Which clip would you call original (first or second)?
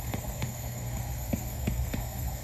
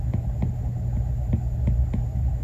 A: second